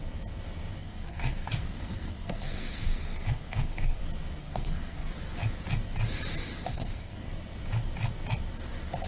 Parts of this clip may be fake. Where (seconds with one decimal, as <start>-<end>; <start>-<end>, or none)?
0.8-4.0; 4.4-5.1; 6.7-7.3